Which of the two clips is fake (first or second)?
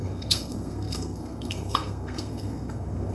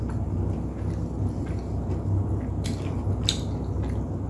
first